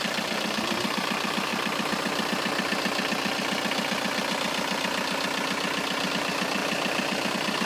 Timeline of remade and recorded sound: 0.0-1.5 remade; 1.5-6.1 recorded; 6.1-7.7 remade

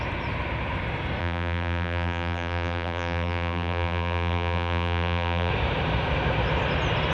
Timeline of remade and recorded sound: 0.0-1.2 recorded; 1.2-5.5 remade; 5.5-7.1 recorded

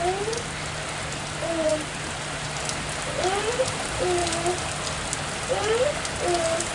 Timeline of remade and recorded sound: 0.0-1.7 recorded; 1.7-2.6 remade; 2.6-6.7 recorded

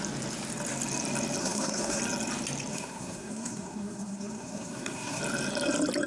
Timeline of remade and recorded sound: 0.0-1.4 recorded; 1.4-2.0 remade; 2.0-2.7 recorded; 2.7-5.2 remade; 5.2-6.1 recorded

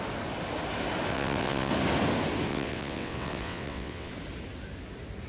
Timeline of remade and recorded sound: 0.0-1.1 recorded; 1.1-1.7 remade; 1.7-2.5 recorded; 2.5-4.1 remade; 4.1-5.3 recorded

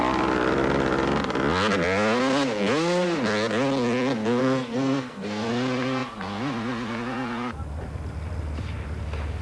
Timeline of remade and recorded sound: 0.0-4.4 recorded; 4.4-5.5 remade; 5.5-9.4 recorded

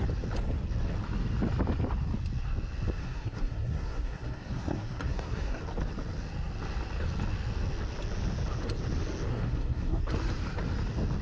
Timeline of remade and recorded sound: 0.0-3.0 recorded; 3.0-5.6 remade; 5.6-9.3 recorded; 9.3-10.0 remade; 10.0-11.2 recorded